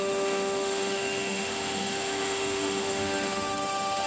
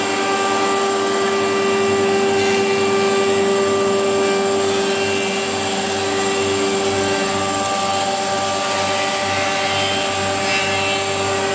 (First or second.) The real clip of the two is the second